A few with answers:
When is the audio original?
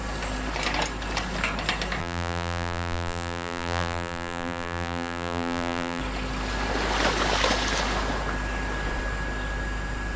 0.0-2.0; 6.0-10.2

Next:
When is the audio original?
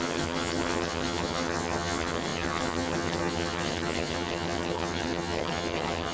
none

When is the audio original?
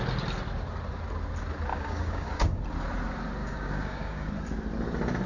0.0-1.7; 2.6-3.4; 4.3-5.3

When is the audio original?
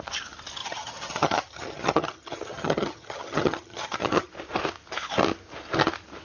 0.0-0.6; 4.3-6.2